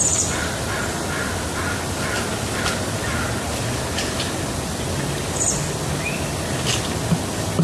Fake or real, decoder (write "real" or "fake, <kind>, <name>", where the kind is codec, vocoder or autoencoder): real